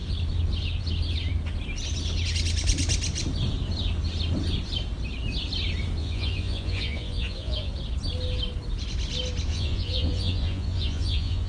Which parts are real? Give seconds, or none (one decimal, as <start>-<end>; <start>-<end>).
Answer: 0.0-6.0; 7.7-9.5